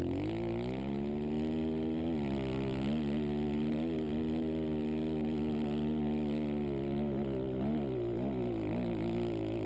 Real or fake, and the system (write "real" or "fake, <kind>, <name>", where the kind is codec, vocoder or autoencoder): real